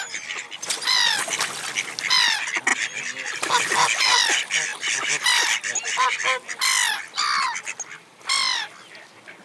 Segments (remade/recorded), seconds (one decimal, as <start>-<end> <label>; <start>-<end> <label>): 0.0-2.7 recorded; 2.7-3.5 remade; 3.5-4.7 recorded; 4.7-6.2 remade; 6.2-8.1 recorded; 8.1-8.7 remade; 8.7-9.4 recorded